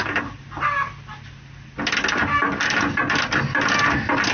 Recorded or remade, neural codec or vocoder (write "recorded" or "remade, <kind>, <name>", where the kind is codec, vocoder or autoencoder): recorded